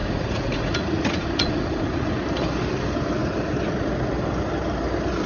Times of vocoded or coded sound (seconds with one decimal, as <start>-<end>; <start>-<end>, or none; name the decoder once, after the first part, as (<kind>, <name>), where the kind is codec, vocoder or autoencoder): 0.0-2.2 (vocoder, Vocos)